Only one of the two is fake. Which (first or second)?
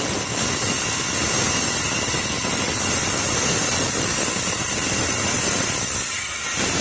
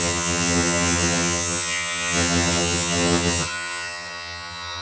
second